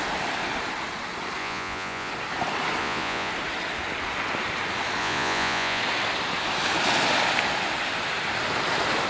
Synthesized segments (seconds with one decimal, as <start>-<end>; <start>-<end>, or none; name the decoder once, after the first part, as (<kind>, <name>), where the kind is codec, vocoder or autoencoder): 1.4-2.1 (vocoder, Vocos); 2.8-3.3; 5.0-5.8